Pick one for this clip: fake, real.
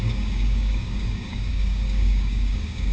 fake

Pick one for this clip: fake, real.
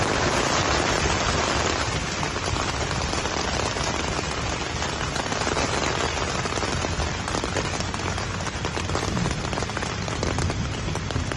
real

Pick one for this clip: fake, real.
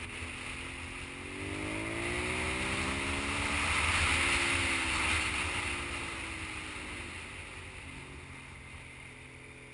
real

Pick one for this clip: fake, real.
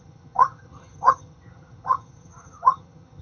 fake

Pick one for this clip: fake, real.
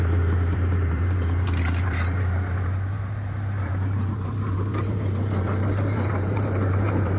fake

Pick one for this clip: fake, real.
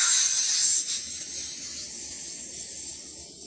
real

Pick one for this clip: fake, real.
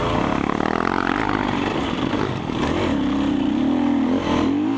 real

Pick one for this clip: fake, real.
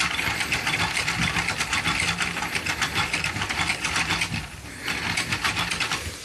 real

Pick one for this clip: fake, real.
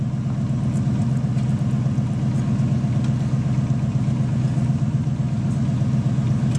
real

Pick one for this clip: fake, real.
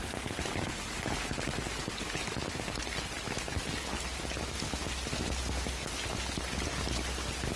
real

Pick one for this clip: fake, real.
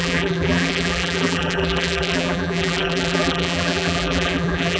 fake